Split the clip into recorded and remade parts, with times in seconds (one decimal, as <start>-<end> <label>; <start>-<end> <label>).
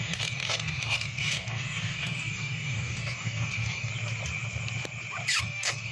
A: 0.0-3.9 remade; 3.9-5.4 recorded; 5.4-5.9 remade